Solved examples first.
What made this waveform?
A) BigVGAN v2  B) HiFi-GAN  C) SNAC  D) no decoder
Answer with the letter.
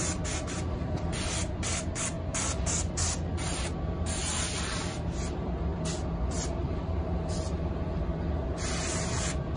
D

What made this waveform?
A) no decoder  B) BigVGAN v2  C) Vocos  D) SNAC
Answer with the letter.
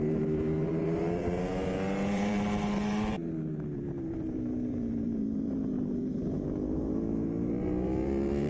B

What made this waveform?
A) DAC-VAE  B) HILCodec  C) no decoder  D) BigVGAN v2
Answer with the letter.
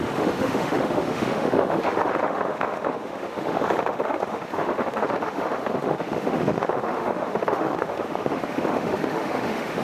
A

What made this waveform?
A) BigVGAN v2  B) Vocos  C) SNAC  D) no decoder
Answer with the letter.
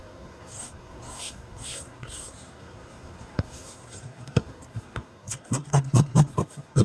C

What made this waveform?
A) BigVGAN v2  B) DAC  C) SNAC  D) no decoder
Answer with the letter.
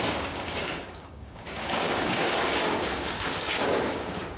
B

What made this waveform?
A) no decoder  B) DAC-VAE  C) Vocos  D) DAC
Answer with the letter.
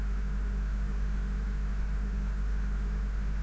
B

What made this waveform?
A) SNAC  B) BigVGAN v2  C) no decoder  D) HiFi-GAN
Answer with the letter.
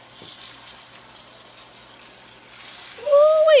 C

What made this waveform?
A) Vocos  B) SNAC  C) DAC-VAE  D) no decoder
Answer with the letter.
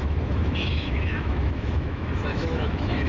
C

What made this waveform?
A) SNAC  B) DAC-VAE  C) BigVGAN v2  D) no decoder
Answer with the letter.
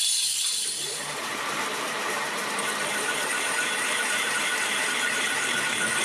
C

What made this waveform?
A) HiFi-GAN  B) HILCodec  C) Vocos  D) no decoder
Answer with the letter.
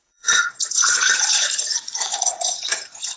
C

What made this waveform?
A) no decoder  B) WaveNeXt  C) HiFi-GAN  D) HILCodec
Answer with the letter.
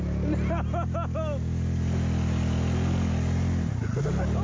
A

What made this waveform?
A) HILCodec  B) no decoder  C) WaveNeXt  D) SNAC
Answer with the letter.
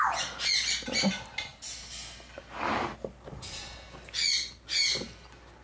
B